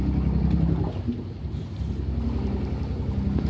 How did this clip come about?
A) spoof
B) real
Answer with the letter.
B